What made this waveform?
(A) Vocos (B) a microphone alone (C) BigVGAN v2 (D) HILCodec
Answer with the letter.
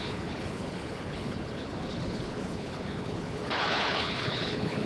D